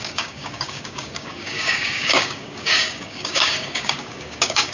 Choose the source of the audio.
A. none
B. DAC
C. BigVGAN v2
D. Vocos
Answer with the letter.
B